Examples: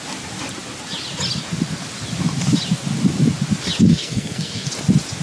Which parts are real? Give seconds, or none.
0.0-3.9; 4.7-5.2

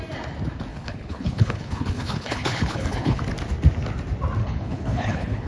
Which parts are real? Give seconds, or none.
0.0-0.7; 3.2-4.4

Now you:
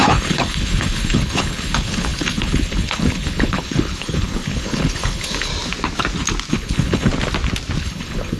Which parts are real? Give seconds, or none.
5.5-6.5; 7.1-7.8

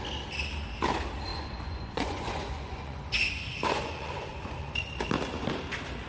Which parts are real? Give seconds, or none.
0.0-1.3; 5.0-6.1